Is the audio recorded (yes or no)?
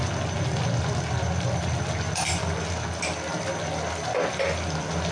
yes